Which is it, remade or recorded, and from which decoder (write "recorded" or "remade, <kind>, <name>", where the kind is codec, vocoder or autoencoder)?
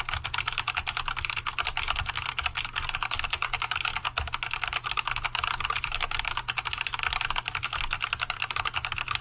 recorded